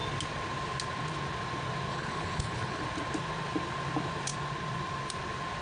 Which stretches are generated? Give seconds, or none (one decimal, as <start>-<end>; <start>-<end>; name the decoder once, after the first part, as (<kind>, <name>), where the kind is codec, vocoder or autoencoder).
1.9-2.8 (codec, HILCodec)